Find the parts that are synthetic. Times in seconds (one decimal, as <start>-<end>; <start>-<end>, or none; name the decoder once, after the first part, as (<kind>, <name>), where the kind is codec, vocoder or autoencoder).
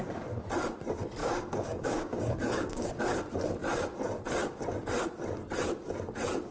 1.2-3.0 (codec, DAC)